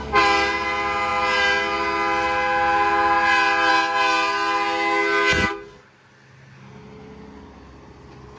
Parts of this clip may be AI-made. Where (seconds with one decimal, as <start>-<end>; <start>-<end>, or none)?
none